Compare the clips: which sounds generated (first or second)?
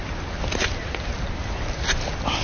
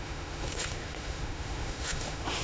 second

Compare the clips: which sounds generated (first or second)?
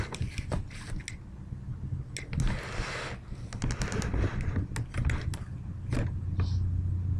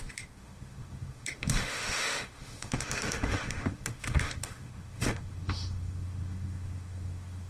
second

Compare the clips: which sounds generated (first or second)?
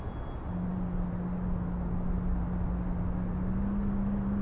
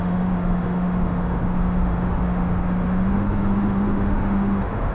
second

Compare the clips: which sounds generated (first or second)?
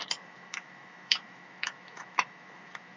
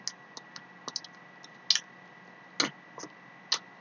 first